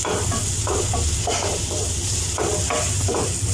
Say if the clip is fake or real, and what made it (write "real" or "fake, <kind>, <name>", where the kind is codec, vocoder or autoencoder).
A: real